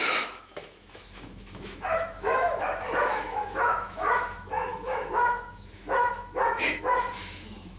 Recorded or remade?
remade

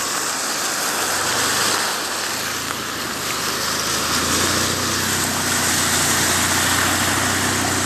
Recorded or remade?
recorded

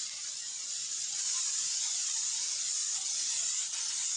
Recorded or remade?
recorded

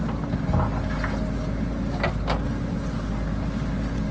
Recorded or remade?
recorded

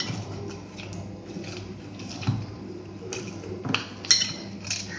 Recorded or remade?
recorded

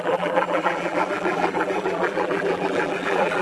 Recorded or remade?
remade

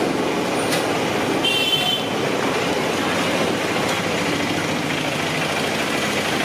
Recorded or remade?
recorded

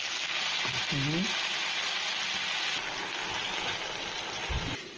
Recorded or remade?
recorded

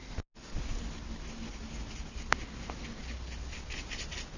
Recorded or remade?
recorded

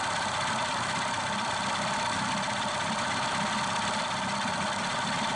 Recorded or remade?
recorded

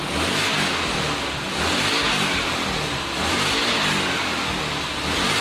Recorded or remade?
recorded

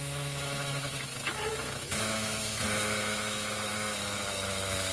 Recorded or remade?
remade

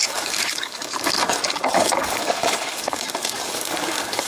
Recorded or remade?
remade